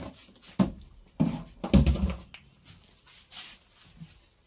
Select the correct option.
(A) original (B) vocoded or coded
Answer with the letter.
A